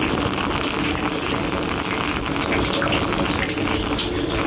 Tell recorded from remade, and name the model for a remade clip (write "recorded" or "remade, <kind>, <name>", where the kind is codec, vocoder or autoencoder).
recorded